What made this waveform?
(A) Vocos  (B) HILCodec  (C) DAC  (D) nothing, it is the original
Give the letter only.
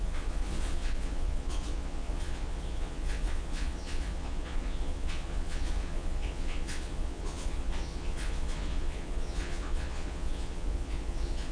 A